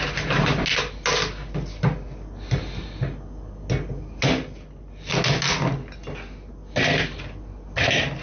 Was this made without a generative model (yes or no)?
yes